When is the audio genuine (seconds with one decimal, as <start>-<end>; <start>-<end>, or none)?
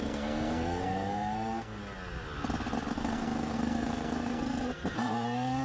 1.8-2.9